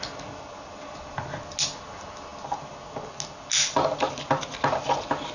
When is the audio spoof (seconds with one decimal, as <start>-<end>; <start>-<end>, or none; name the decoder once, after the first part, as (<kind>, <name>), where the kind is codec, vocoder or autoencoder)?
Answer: none